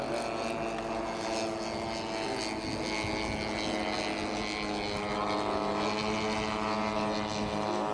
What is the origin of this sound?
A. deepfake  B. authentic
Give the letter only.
B